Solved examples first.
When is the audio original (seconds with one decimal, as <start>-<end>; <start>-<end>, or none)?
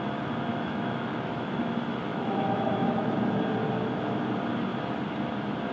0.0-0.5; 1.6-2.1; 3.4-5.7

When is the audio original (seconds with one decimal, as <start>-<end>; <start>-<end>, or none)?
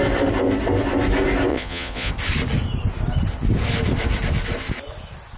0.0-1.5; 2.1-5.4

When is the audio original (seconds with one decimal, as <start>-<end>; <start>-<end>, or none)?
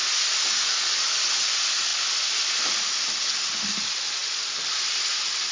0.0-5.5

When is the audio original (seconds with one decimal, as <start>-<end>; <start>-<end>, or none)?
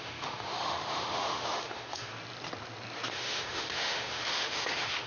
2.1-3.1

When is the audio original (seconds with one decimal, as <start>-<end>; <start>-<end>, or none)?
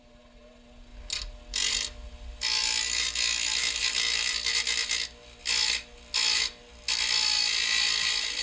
0.0-8.4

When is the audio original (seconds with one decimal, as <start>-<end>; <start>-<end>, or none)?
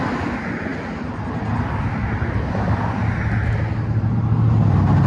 0.0-5.1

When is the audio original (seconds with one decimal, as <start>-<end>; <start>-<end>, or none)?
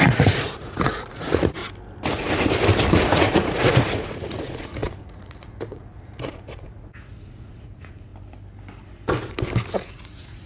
1.6-3.0; 8.1-9.8